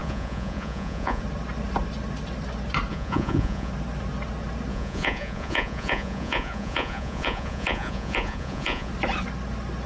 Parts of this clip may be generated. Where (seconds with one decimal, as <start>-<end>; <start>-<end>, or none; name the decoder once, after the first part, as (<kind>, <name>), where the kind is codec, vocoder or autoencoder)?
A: 0.0-1.2 (vocoder, Vocos); 2.9-3.7; 4.7-8.9